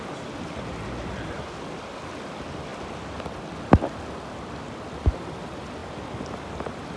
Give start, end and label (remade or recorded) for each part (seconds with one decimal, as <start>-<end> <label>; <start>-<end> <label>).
0.0-7.0 recorded